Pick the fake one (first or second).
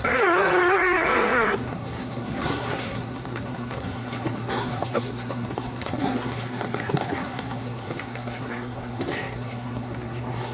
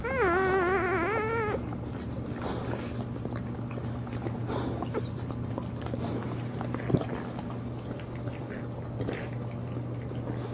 first